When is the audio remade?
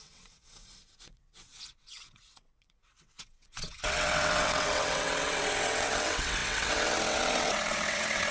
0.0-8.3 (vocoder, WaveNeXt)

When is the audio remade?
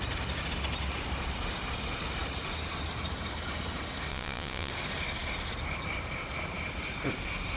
4.1-4.7 (vocoder, WaveNeXt)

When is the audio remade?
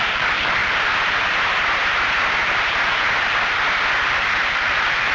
none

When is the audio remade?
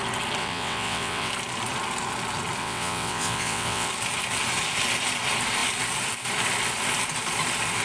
0.4-1.3 (vocoder, WaveNeXt); 2.6-3.9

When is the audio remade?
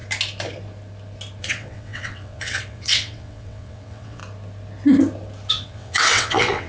1.4-4.2 (vocoder, WaveNeXt); 5.5-6.7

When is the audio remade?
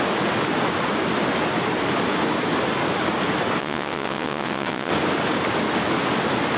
3.6-4.9 (vocoder, WaveNeXt)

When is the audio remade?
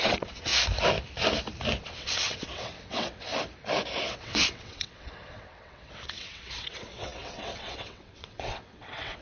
0.0-0.5 (vocoder, WaveNeXt); 1.8-3.3; 4.0-9.2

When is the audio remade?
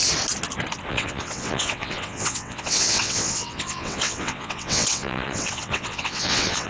0.9-6.7 (vocoder, WaveNeXt)